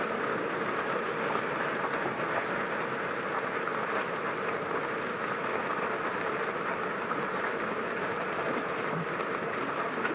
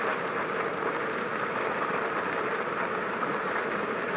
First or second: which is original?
first